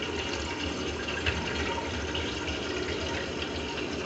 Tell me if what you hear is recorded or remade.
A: recorded